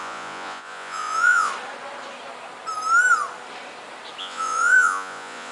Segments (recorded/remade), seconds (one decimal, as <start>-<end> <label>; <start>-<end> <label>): 0.0-1.5 remade; 1.5-4.2 recorded; 4.2-5.5 remade